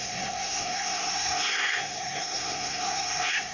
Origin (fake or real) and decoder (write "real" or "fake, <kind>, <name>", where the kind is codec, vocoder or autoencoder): fake, codec, SNAC